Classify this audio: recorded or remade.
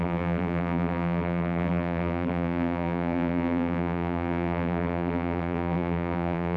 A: remade